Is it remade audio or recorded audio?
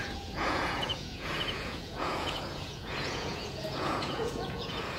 remade